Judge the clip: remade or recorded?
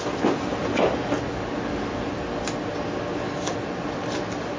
recorded